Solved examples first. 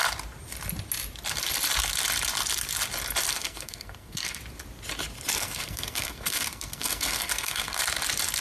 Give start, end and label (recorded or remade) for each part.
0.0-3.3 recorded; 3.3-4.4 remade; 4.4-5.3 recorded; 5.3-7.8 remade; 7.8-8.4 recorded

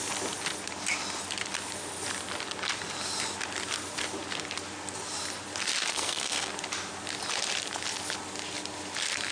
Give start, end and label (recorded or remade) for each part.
0.0-5.9 recorded; 5.9-6.5 remade; 6.5-9.3 recorded

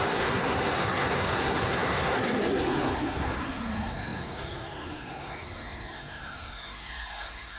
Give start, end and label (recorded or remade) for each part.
0.0-7.6 remade

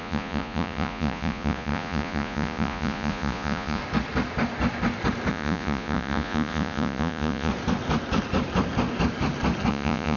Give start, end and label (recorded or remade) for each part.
0.0-3.8 remade; 3.8-5.3 recorded; 5.3-7.5 remade; 7.5-9.7 recorded; 9.7-10.2 remade

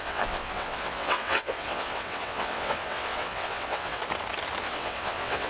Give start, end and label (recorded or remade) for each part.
0.0-4.0 remade; 4.0-4.6 recorded; 4.6-5.5 remade

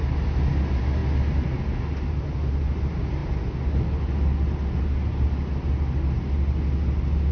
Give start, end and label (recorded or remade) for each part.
0.0-7.3 recorded

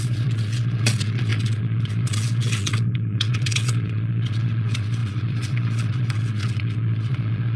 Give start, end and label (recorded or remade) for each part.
0.0-7.6 remade

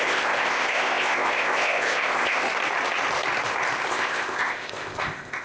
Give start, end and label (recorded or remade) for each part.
0.0-2.4 remade; 2.4-3.9 recorded; 3.9-5.4 remade